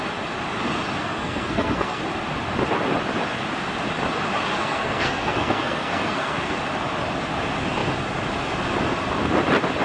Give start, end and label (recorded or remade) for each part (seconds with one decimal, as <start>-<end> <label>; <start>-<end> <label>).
0.0-1.0 recorded; 1.0-2.0 remade; 2.0-4.6 recorded; 4.6-6.6 remade; 6.6-9.8 recorded